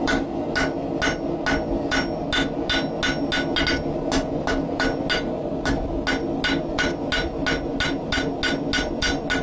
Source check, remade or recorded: recorded